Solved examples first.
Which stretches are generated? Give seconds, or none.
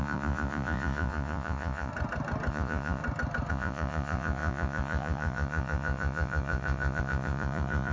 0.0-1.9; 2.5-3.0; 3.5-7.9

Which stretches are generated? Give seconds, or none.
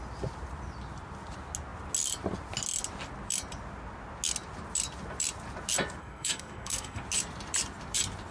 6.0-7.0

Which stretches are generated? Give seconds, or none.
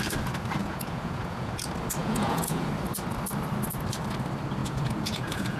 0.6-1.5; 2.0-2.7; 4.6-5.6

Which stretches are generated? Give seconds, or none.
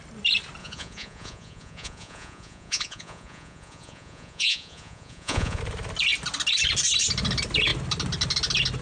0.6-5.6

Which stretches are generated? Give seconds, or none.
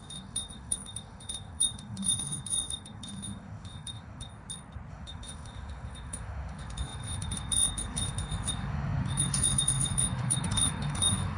0.0-4.3; 4.9-11.4